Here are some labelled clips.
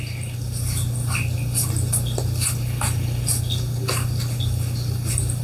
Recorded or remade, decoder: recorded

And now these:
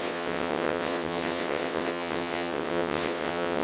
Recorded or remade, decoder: remade, vocoder, WaveNeXt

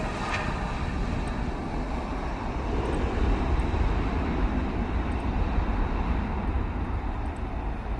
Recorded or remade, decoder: recorded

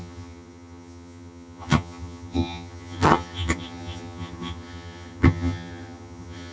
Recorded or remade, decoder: remade, vocoder, HiFi-GAN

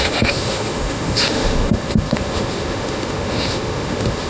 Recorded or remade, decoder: remade, autoencoder, DAC-VAE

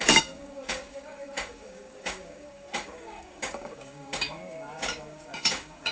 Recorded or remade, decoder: remade, codec, DAC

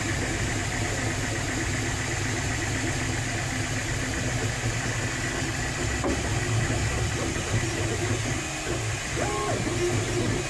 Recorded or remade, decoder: recorded